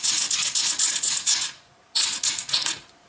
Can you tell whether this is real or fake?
fake